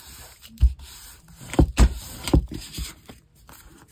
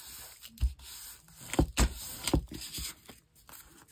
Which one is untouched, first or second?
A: second